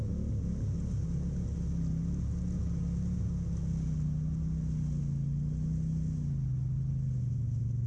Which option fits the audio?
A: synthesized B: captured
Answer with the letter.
B